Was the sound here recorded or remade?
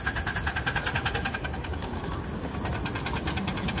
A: recorded